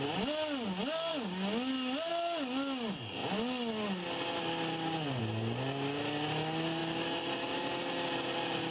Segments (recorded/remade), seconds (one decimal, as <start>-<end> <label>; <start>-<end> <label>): 0.0-8.7 recorded